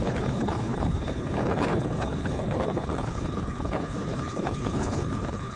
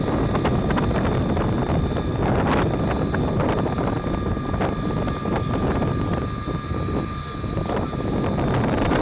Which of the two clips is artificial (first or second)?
first